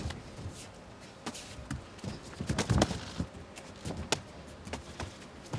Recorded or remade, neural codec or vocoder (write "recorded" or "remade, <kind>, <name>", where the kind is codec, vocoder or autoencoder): recorded